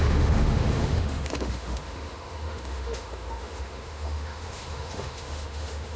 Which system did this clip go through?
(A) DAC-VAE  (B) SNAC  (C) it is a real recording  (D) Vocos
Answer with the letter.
A